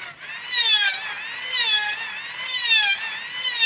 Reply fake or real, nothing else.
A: real